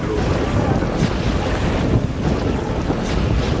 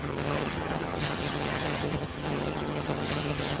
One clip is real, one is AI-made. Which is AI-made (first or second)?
second